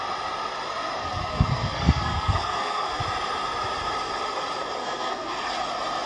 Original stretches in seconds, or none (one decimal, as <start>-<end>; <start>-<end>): 0.0-1.0; 3.0-4.8; 5.3-6.1